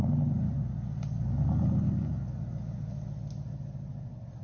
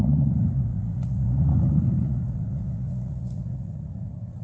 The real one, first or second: first